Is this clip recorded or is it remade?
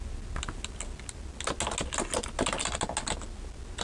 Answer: recorded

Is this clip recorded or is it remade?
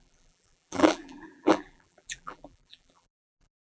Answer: remade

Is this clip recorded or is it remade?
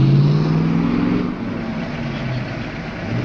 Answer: recorded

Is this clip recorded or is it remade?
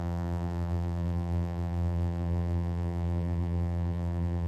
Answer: remade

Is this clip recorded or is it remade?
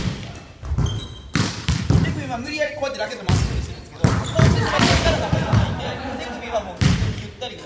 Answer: remade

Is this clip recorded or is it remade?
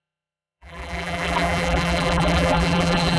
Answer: remade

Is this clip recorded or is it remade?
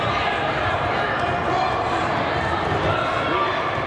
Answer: recorded